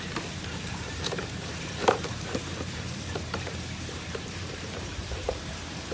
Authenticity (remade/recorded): remade